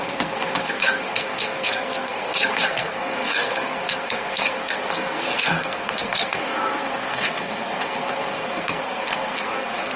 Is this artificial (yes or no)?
yes